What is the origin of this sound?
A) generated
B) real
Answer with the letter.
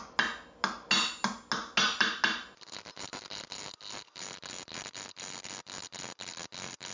B